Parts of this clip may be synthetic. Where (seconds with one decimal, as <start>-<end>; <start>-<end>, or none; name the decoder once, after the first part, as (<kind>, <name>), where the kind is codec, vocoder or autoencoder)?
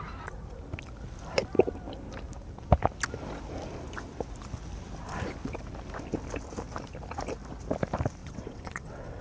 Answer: 8.2-9.2 (vocoder, WaveNeXt)